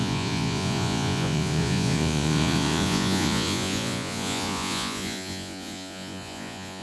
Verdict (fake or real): fake